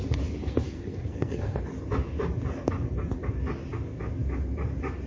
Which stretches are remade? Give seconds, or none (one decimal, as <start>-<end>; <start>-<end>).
0.4-1.6